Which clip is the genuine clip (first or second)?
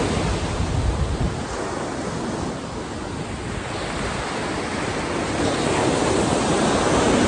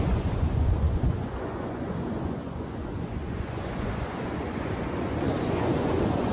first